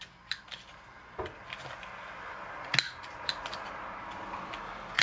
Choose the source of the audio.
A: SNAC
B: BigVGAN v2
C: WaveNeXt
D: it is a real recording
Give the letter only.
D